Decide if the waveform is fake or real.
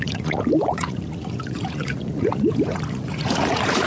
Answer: fake